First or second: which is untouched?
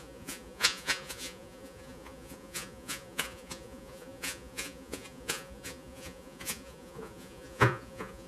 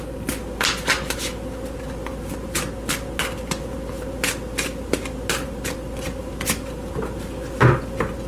second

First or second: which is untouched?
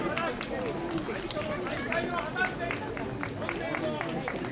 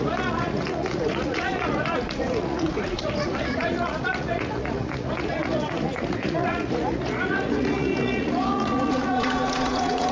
first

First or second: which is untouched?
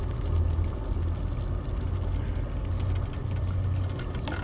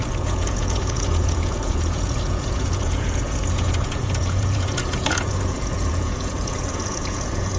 first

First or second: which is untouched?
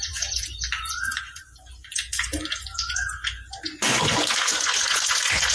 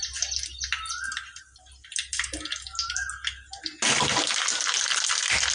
second